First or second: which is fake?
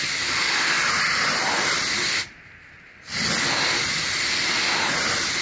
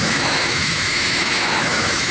second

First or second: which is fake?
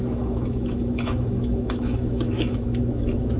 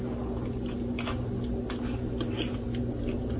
first